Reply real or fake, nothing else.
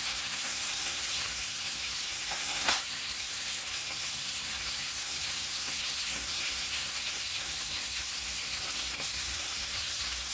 fake